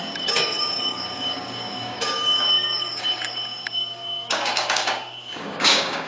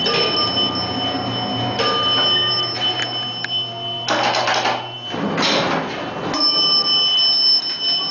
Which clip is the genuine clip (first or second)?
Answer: second